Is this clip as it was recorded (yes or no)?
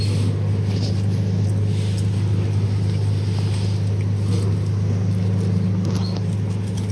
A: yes